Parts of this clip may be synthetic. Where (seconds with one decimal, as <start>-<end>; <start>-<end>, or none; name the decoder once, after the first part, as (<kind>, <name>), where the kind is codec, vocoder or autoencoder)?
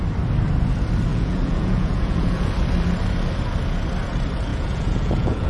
1.1-2.5 (vocoder, Vocos); 4.5-5.5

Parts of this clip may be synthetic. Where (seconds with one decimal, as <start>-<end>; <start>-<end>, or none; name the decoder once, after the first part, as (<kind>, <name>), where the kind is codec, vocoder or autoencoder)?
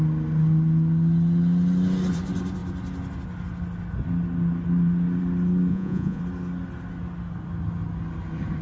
5.7-6.2 (vocoder, Vocos)